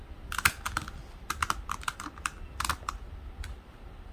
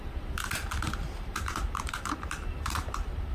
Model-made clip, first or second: second